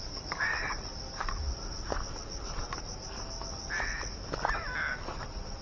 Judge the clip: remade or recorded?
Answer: recorded